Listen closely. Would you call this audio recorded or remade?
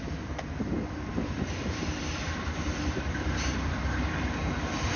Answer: remade